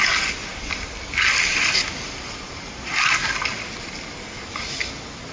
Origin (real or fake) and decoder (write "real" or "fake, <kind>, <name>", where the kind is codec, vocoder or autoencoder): real